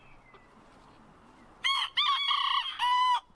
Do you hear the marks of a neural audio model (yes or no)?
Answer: no